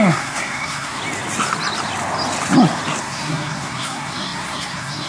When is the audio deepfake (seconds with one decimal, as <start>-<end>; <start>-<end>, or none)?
0.0-1.0; 3.0-5.1

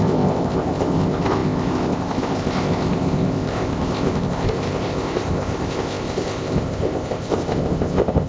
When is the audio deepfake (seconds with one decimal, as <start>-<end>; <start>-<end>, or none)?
0.0-8.3

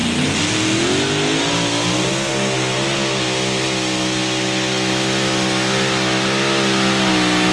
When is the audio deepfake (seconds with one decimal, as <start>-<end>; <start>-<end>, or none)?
none